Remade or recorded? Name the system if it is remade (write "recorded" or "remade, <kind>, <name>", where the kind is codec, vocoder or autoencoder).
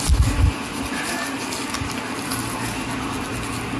recorded